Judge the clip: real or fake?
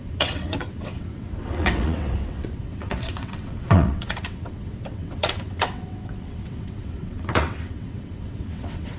fake